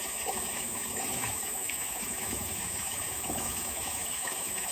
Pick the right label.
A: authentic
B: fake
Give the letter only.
B